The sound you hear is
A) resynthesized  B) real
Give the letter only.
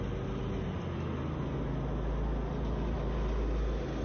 B